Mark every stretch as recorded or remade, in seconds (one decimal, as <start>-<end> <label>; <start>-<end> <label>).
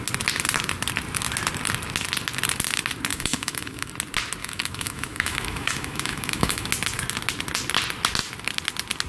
0.0-3.1 recorded; 3.1-3.9 remade; 3.9-4.4 recorded; 4.4-6.7 remade; 6.7-9.1 recorded